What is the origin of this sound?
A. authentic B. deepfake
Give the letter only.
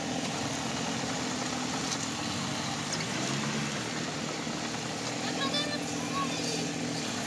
A